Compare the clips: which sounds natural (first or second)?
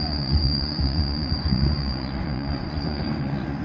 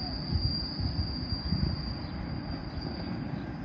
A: second